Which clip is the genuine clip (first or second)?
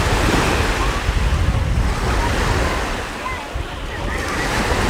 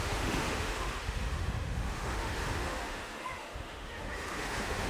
first